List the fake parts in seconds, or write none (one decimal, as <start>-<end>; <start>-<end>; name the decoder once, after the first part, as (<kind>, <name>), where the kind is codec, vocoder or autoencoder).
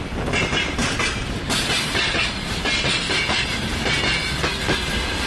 0.8-4.0 (vocoder, BigVGAN v2)